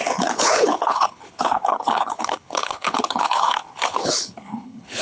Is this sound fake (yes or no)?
yes